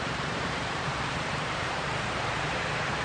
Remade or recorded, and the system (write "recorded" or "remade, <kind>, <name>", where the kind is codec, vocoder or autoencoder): remade, vocoder, BigVGAN v2